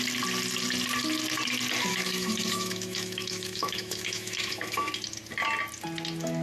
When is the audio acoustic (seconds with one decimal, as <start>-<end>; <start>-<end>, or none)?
0.0-1.9; 4.9-6.4